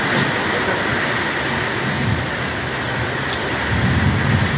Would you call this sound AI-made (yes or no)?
no